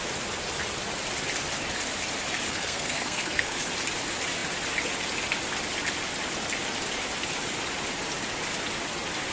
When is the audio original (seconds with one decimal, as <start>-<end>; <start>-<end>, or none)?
0.0-2.5; 3.6-9.3